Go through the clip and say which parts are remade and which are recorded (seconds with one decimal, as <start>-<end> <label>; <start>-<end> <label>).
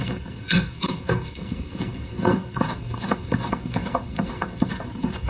0.0-5.3 remade